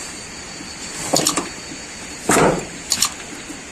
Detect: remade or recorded recorded